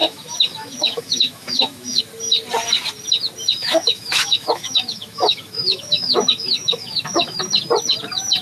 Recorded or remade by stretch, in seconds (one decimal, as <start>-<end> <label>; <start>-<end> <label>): 0.0-2.0 remade; 2.0-3.6 recorded; 3.6-7.4 remade; 7.4-8.4 recorded